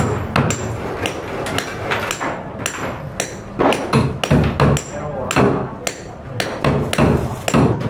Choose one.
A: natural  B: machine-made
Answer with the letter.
A